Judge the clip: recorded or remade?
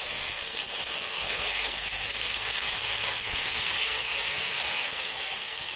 remade